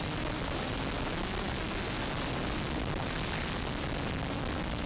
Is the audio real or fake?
real